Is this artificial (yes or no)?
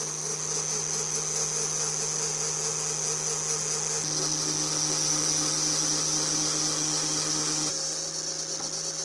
no